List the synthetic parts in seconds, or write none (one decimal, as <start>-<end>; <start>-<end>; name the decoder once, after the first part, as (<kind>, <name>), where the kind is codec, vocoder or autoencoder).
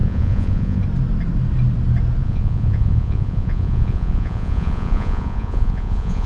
0.0-0.8 (vocoder, Vocos); 2.2-6.3